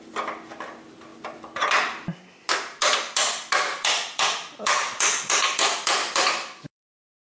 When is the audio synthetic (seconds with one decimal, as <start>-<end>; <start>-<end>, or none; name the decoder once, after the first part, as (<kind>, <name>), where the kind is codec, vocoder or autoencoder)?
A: 0.0-1.1 (vocoder, BigVGAN v2); 3.2-7.4